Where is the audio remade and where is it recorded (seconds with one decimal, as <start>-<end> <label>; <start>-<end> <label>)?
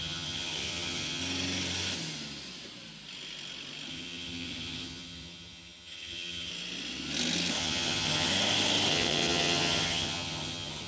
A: 0.0-1.2 remade; 1.2-3.9 recorded; 3.9-6.5 remade; 6.5-7.6 recorded; 7.6-8.3 remade; 8.3-8.9 recorded; 8.9-10.9 remade